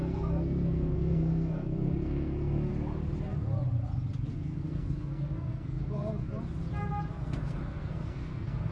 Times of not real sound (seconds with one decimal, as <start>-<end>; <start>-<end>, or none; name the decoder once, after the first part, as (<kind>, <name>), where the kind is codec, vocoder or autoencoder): 0.0-2.7 (codec, SNAC); 4.3-6.3; 7.1-8.7